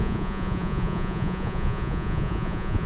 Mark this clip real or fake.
fake